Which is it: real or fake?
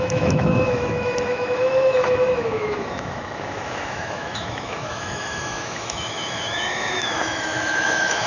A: fake